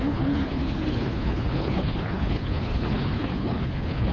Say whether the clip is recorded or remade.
remade